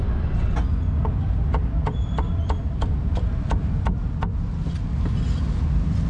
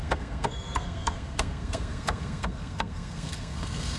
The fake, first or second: second